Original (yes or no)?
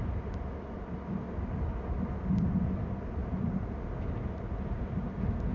yes